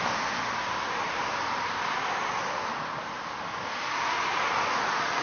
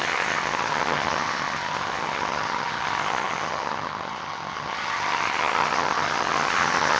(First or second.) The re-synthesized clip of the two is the second